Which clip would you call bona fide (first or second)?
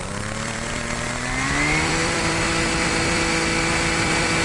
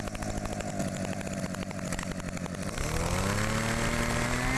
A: second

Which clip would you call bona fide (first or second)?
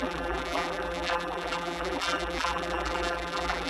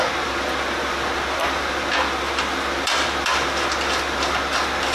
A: second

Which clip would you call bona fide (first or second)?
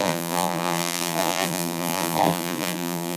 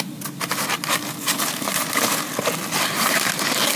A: second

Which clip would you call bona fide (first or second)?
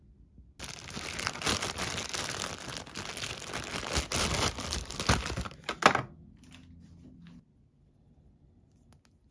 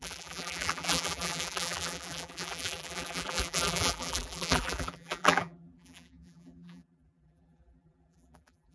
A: first